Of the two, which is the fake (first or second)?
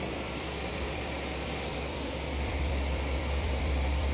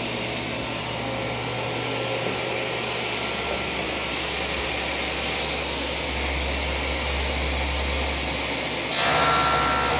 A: first